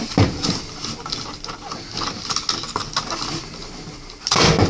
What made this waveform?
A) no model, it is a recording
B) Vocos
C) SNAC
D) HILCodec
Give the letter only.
A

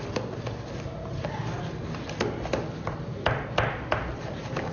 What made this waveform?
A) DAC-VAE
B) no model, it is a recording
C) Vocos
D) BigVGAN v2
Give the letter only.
B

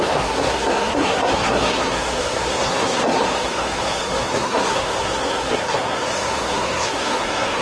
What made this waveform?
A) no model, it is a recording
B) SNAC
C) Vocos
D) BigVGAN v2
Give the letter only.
B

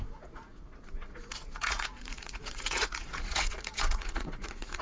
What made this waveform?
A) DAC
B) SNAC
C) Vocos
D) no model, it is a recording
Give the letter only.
C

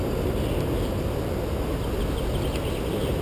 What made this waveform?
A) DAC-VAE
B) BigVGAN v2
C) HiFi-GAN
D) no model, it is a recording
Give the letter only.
D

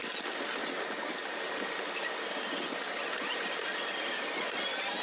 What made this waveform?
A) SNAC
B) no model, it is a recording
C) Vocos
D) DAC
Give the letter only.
B